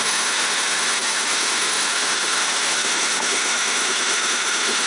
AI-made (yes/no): yes